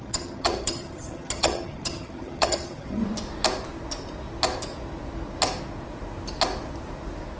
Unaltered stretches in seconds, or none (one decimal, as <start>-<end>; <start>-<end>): 3.0-7.4